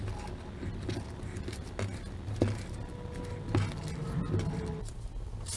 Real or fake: real